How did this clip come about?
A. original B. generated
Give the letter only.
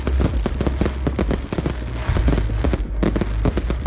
A